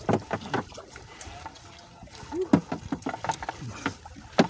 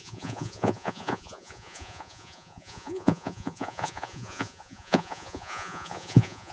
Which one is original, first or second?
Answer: first